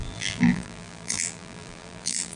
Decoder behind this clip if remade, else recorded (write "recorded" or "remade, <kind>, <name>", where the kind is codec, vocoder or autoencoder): remade, vocoder, BigVGAN v2